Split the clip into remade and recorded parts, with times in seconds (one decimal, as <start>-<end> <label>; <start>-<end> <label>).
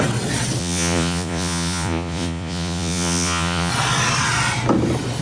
0.0-0.6 recorded; 0.6-3.7 remade; 3.7-5.2 recorded